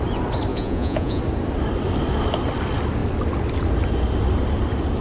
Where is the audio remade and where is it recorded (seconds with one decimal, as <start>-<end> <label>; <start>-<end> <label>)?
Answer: 0.0-0.5 recorded; 0.5-1.2 remade; 1.2-5.0 recorded